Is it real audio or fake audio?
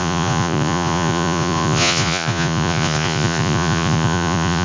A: fake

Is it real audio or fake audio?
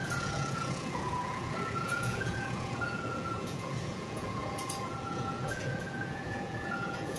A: fake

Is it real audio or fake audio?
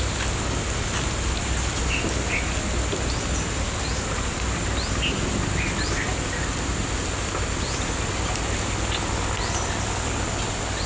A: real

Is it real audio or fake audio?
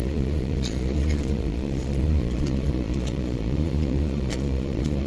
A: fake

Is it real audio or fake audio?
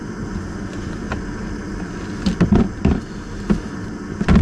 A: real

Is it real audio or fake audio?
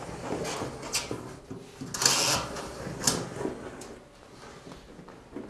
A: real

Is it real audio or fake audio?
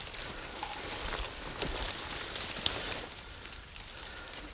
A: real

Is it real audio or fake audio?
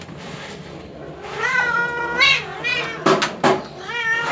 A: real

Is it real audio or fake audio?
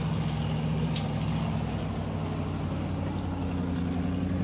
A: real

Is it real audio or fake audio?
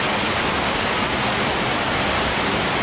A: real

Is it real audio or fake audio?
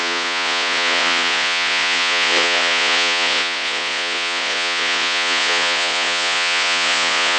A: fake